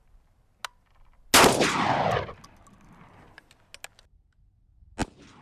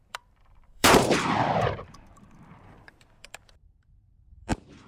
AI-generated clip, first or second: second